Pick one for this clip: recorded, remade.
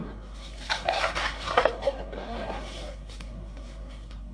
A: remade